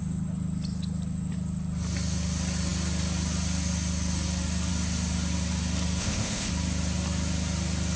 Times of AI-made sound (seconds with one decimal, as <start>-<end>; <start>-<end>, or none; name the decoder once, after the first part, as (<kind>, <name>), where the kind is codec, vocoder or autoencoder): 6.0-6.5 (codec, ZipCodec)